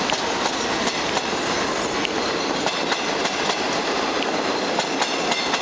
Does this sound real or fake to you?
real